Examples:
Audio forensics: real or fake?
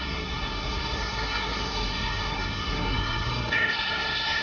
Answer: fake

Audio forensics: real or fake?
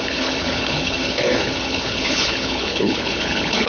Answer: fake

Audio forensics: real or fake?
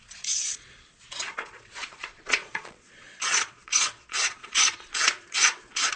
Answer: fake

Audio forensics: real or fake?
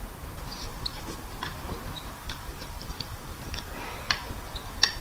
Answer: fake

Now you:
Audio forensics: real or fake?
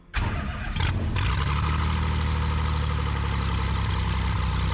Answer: real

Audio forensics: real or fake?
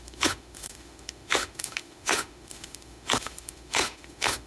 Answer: fake